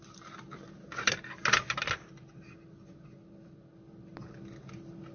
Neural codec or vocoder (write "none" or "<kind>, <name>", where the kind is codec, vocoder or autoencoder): none